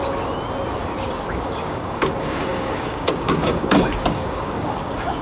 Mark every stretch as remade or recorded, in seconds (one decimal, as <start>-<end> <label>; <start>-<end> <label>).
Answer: 0.0-1.3 recorded; 1.3-5.2 remade